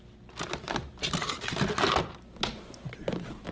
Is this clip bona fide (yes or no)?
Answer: yes